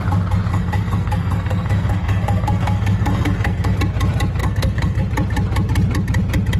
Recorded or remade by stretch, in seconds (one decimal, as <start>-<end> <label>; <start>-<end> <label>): 0.0-0.5 recorded; 0.5-3.8 remade; 3.8-4.4 recorded; 4.4-5.0 remade; 5.0-6.6 recorded